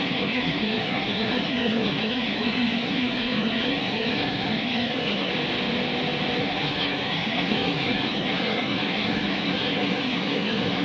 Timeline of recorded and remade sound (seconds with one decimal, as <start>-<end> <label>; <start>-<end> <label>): 0.0-5.3 remade; 5.3-6.4 recorded; 6.4-10.8 remade